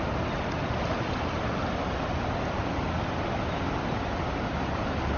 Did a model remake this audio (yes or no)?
no